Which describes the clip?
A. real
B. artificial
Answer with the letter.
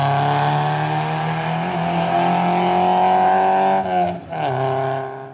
A